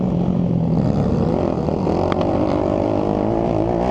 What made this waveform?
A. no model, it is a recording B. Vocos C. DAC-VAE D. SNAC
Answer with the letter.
A